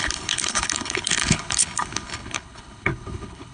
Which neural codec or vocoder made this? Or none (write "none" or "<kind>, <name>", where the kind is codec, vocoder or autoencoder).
codec, HILCodec